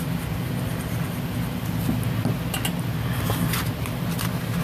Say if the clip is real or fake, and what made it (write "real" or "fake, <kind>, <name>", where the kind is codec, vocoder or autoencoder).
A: real